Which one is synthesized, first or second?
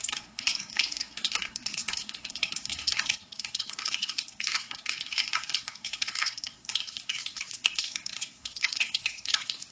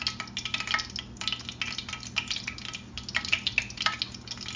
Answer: first